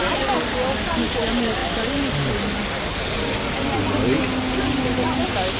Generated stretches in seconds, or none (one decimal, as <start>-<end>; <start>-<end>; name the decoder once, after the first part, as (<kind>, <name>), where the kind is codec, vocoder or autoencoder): none